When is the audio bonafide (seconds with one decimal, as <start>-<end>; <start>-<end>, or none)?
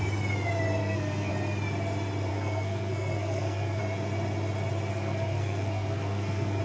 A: 0.0-0.8; 1.3-2.3; 3.8-4.9